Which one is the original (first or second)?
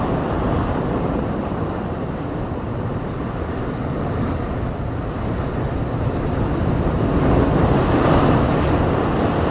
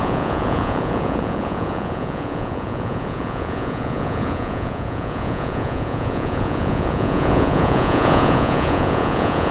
first